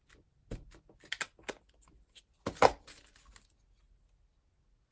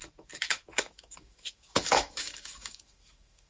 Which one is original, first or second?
first